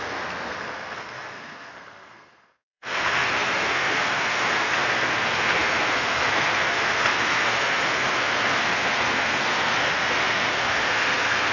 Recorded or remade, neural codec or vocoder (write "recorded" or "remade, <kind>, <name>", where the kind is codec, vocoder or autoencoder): remade, codec, SNAC